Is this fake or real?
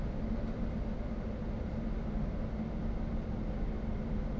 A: real